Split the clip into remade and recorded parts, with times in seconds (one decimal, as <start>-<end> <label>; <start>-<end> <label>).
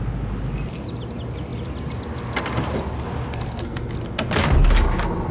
0.0-3.3 recorded; 3.3-3.9 remade; 3.9-5.3 recorded